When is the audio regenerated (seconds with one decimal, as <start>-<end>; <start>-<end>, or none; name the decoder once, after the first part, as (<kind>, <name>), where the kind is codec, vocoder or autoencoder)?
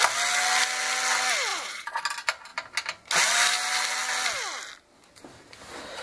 1.5-2.0 (vocoder, Vocos)